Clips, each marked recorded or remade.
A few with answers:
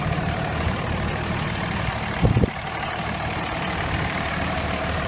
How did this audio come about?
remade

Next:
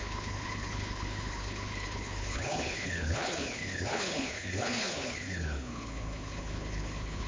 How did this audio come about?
remade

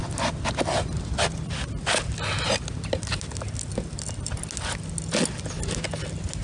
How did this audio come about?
recorded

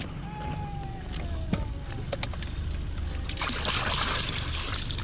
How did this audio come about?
recorded